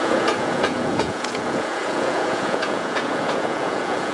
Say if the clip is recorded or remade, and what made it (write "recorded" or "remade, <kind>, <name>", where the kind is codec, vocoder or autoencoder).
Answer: remade, vocoder, Vocos